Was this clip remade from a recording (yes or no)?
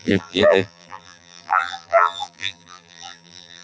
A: yes